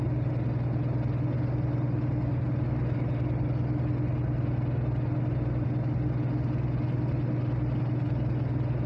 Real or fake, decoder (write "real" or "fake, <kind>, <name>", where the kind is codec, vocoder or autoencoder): real